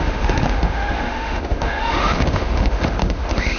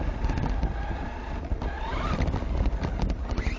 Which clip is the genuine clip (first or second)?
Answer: second